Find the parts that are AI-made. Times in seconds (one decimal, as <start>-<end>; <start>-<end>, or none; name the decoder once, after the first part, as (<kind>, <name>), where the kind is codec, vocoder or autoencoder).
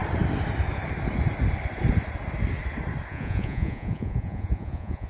3.1-5.1 (vocoder, Vocos)